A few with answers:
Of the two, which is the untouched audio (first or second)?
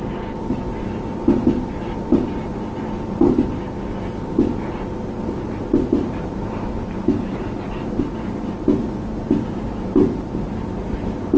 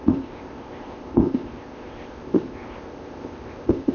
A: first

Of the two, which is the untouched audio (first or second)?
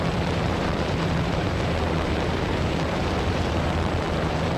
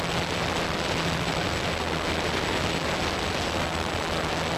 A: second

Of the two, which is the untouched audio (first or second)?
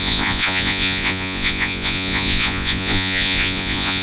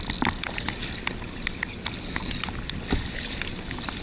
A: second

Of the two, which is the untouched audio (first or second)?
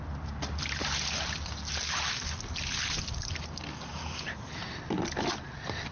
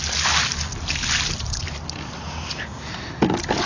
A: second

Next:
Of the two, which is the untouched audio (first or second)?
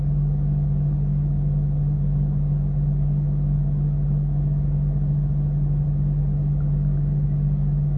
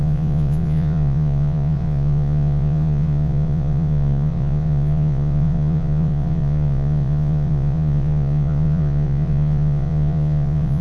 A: first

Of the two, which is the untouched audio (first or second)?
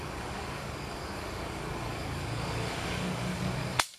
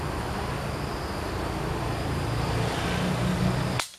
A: second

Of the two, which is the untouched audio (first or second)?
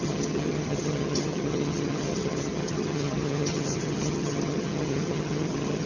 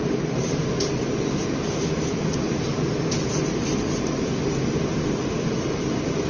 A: second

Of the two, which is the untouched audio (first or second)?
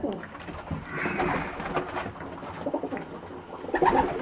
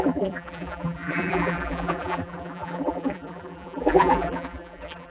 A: first